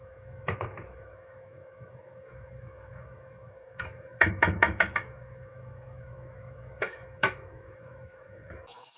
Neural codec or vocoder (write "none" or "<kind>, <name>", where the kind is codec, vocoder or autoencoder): autoencoder, DAC-VAE